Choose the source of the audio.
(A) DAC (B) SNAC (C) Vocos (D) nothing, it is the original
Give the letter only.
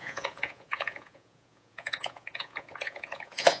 C